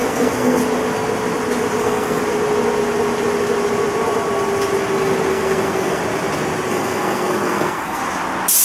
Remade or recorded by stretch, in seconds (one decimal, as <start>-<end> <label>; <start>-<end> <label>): 0.0-0.6 remade; 0.6-1.8 recorded; 1.8-2.2 remade; 2.2-5.3 recorded; 5.3-6.0 remade; 6.0-6.7 recorded; 6.7-8.0 remade; 8.0-8.6 recorded